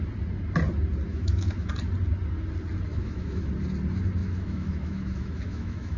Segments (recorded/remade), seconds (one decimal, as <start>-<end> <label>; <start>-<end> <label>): 0.0-1.1 recorded; 1.1-1.7 remade; 1.7-2.9 recorded; 2.9-3.5 remade; 3.5-4.2 recorded; 4.2-6.0 remade